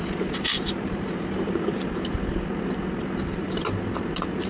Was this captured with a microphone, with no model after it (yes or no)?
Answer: yes